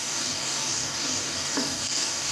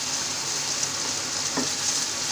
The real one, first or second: second